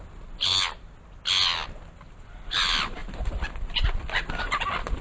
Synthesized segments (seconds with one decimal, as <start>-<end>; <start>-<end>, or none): 0.0-0.5; 2.0-5.0